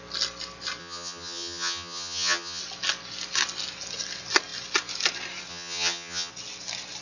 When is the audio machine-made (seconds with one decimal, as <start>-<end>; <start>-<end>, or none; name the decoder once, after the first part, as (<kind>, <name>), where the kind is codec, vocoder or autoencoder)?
0.8-2.6 (vocoder, HiFi-GAN); 5.5-6.3